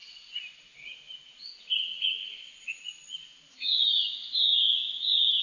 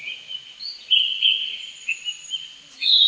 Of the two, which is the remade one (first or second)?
first